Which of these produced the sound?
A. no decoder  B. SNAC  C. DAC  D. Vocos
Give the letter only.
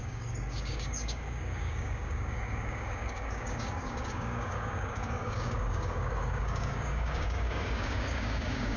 C